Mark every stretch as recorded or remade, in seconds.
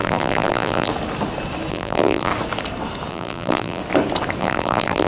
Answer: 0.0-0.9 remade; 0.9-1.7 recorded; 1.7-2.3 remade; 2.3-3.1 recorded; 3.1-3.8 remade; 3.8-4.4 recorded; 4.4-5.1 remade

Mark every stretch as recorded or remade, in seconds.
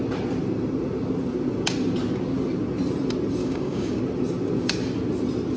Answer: 0.0-3.4 recorded; 3.4-4.0 remade; 4.0-5.6 recorded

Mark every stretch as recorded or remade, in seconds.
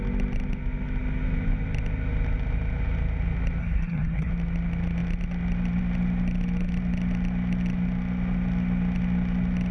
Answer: 0.0-3.6 recorded; 3.6-4.3 remade; 4.3-9.7 recorded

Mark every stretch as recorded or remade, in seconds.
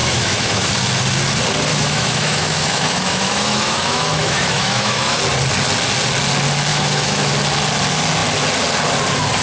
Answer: 0.0-0.7 remade; 0.7-1.7 recorded; 1.7-5.2 remade; 5.2-6.7 recorded; 6.7-7.3 remade; 7.3-9.4 recorded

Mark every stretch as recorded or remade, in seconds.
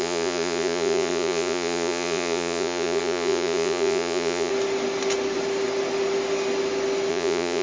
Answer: 0.0-4.5 remade; 4.5-7.1 recorded; 7.1-7.6 remade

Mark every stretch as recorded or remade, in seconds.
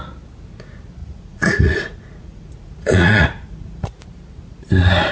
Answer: 0.0-1.0 recorded; 1.0-4.0 remade; 4.0-5.1 recorded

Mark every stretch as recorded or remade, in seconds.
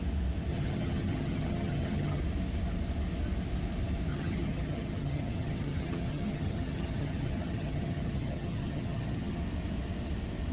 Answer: 0.0-0.5 recorded; 0.5-2.2 remade; 2.2-4.1 recorded; 4.1-9.4 remade; 9.4-10.5 recorded